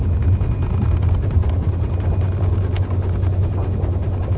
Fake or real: real